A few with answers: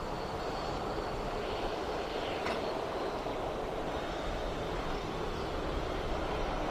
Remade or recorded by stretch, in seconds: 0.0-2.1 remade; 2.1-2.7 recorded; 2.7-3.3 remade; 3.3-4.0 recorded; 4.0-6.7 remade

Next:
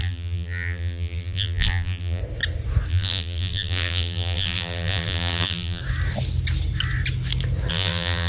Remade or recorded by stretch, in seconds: 0.0-2.2 remade; 2.2-2.9 recorded; 2.9-5.8 remade; 5.8-7.7 recorded; 7.7-8.3 remade